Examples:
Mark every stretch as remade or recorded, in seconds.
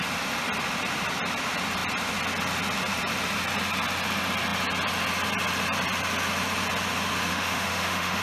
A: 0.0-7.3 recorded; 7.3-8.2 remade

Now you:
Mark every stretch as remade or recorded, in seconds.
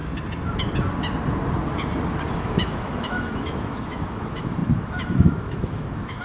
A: 0.0-2.3 recorded; 2.3-6.2 remade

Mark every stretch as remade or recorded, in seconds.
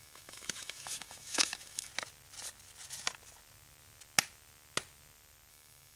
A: 0.0-1.9 remade; 1.9-5.5 recorded; 5.5-6.0 remade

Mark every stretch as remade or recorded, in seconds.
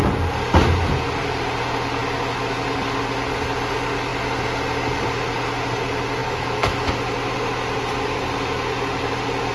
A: 0.0-6.2 recorded; 6.2-7.0 remade; 7.0-9.5 recorded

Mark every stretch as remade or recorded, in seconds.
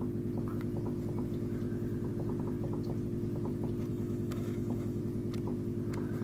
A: 0.0-3.9 recorded; 3.9-5.0 remade; 5.0-6.2 recorded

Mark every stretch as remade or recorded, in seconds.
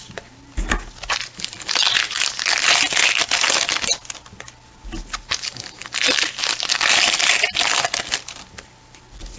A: 0.0-9.4 recorded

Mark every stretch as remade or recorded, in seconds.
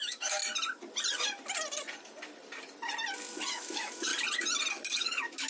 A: 0.0-0.4 remade; 0.4-3.5 recorded; 3.5-4.1 remade; 4.1-4.7 recorded; 4.7-5.5 remade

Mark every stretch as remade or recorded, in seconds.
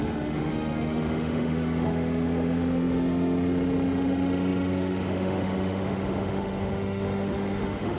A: 0.0-8.0 remade